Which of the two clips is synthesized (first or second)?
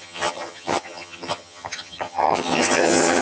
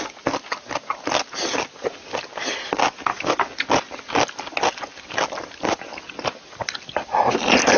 first